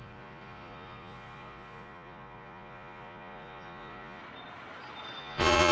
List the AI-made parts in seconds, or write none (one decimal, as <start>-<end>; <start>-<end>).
0.0-4.2; 5.2-5.7